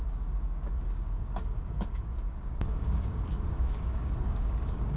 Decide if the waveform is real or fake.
fake